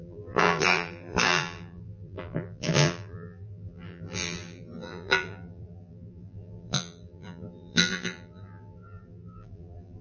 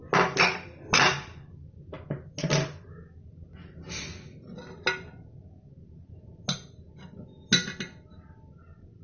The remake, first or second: first